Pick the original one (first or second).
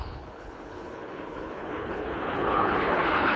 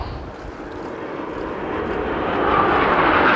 second